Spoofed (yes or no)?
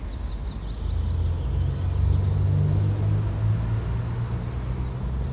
no